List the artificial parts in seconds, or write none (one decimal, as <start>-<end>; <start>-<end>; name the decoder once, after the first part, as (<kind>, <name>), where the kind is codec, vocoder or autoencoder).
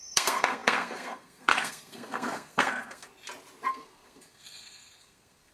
0.0-3.1 (codec, SNAC); 3.7-5.5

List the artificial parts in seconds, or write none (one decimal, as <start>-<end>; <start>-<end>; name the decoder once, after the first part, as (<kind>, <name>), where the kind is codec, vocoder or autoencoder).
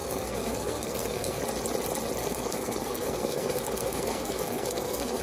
0.0-1.4 (codec, SNAC); 2.2-5.2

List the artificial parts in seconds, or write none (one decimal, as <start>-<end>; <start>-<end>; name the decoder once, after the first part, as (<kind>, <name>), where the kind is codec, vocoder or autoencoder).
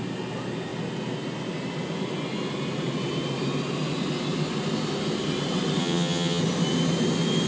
5.8-6.4 (vocoder, HiFi-GAN)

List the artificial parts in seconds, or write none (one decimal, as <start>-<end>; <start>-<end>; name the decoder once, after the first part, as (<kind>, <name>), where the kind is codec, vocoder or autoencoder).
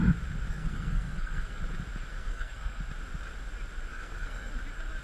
0.5-1.6 (codec, SNAC); 2.1-2.8; 3.9-4.5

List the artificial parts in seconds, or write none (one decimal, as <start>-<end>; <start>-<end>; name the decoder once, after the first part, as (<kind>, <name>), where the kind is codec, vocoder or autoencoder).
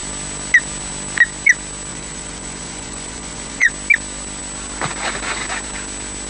1.9-3.7 (vocoder, Vocos)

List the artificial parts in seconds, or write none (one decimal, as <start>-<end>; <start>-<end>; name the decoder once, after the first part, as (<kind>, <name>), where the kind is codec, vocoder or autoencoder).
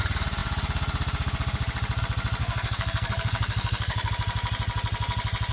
2.4-4.1 (codec, SNAC)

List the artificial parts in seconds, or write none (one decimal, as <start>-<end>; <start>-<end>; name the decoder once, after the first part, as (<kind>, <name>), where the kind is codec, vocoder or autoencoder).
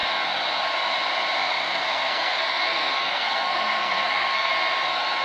1.4-4.5 (codec, SNAC)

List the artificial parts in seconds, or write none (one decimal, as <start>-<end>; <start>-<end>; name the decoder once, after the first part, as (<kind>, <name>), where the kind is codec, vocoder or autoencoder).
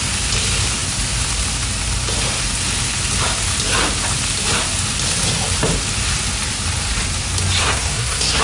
7.6-8.4 (codec, SNAC)